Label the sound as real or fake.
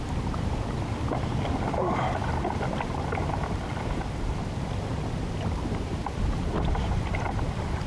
fake